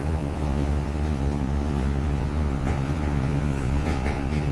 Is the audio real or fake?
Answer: fake